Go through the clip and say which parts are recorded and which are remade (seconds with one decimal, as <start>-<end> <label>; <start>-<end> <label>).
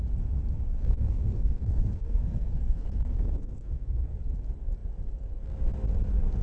0.0-0.7 recorded; 0.7-4.2 remade; 4.2-6.4 recorded